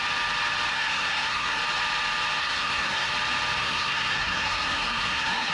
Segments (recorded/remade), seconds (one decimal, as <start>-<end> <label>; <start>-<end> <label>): 0.0-0.7 recorded; 0.7-1.6 remade; 1.6-2.4 recorded; 2.4-3.1 remade; 3.1-3.6 recorded; 3.6-5.5 remade